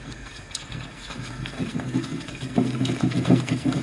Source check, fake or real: fake